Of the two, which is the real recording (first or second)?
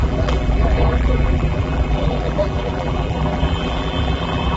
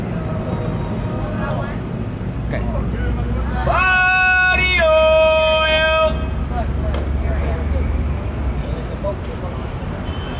second